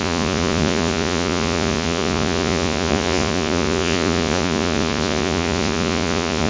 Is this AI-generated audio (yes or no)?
yes